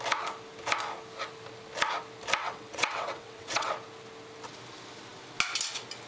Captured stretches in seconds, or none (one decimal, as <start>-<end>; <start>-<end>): 0.0-2.4; 3.7-6.1